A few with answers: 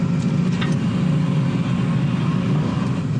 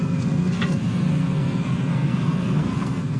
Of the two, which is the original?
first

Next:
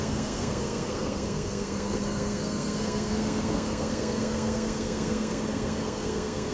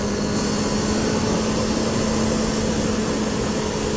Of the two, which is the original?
second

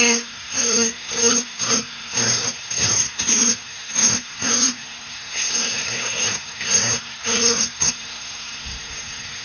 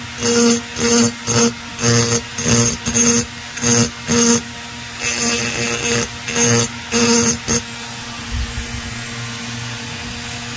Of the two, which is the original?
second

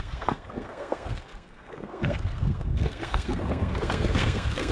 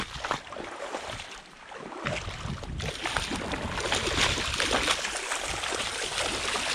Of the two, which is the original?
second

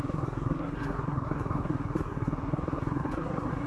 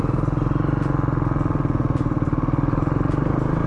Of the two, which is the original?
second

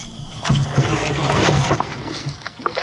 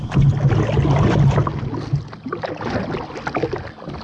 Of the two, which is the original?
second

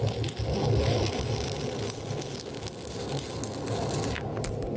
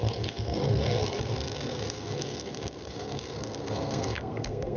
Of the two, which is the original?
first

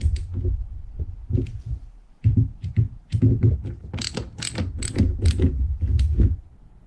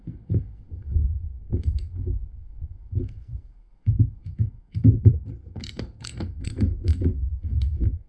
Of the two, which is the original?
first